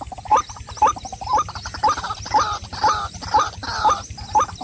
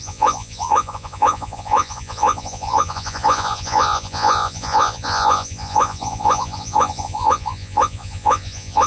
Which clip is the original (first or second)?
first